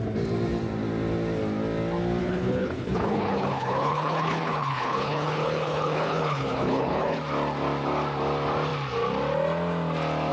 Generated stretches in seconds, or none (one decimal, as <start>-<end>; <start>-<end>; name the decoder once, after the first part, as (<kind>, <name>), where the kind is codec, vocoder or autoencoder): 2.2-7.2 (codec, HILCodec)